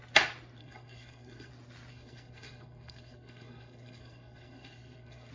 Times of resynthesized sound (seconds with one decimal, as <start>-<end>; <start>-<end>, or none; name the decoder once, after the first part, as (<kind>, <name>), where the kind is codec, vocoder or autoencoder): 0.6-1.5 (codec, SNAC); 1.9-5.3